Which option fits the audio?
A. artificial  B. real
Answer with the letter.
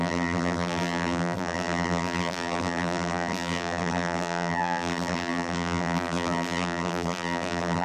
A